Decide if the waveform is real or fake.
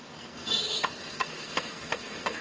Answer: fake